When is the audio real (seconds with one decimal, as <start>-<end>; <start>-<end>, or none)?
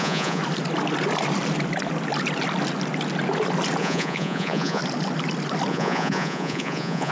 0.4-3.8; 4.8-5.7